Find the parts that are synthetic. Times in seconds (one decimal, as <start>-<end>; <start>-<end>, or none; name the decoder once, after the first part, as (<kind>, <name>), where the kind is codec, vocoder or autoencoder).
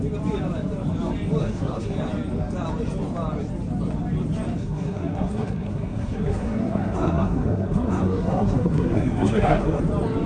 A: 1.4-2.0 (codec, SNAC); 4.6-9.8